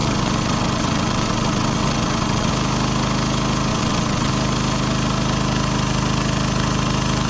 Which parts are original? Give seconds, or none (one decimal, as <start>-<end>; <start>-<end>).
2.5-3.7; 4.3-7.3